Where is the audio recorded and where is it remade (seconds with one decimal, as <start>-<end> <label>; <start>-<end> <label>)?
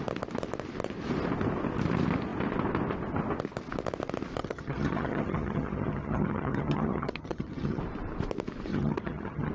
0.0-4.4 recorded; 4.4-7.8 remade; 7.8-8.7 recorded; 8.7-9.5 remade